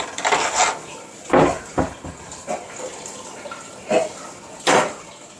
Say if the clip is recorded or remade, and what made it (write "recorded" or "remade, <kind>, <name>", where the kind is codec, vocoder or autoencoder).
recorded